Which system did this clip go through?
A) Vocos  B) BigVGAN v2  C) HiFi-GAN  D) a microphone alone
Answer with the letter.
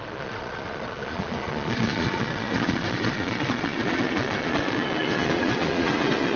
A